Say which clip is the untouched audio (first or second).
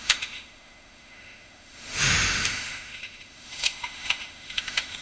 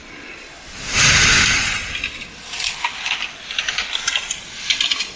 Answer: second